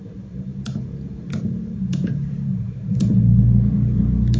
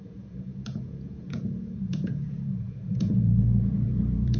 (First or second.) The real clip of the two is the first